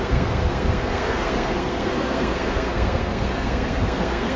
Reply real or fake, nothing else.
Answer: fake